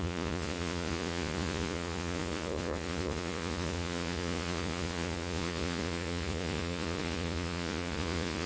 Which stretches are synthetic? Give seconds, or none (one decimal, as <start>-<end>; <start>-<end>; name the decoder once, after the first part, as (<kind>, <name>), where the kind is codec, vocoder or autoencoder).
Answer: 0.0-8.5 (vocoder, Vocos)